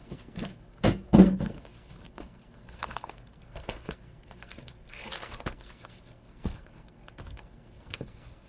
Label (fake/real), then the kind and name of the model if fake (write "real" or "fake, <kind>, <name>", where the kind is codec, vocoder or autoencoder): fake, codec, SNAC